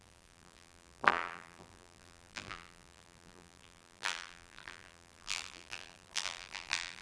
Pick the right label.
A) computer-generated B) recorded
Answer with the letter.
A